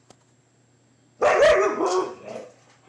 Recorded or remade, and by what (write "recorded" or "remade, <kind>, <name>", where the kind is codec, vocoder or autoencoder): recorded